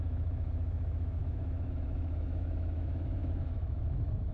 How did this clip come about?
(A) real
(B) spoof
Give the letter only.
B